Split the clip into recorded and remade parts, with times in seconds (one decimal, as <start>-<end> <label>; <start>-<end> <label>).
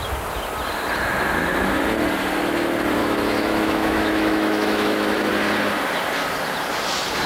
0.0-3.0 recorded; 3.0-5.3 remade; 5.3-7.3 recorded